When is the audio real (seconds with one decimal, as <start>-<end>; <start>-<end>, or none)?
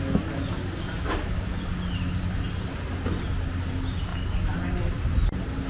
0.0-5.7